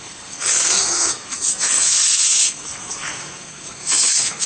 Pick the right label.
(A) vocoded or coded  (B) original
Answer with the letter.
A